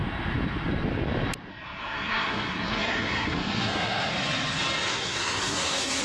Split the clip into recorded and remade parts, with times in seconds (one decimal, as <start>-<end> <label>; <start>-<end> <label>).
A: 0.0-1.5 recorded; 1.5-4.1 remade; 4.1-4.9 recorded; 4.9-6.0 remade